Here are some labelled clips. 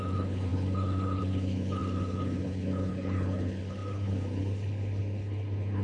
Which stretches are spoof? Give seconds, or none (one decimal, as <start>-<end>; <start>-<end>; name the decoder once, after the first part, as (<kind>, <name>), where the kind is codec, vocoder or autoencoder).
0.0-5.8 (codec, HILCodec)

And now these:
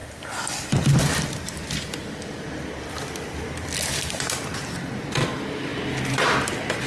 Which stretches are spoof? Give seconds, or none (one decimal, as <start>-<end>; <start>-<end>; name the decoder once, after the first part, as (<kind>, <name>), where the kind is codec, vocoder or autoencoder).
none

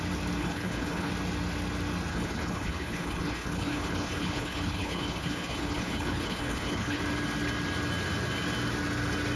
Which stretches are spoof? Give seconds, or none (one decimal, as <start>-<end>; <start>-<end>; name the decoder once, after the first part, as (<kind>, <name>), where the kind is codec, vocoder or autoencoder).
0.4-1.1 (codec, HILCodec); 2.1-7.0

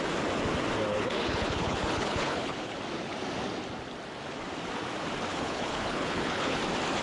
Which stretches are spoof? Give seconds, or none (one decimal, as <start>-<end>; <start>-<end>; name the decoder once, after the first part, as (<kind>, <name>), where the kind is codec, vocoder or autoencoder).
0.9-2.8 (codec, HILCodec); 5.3-6.6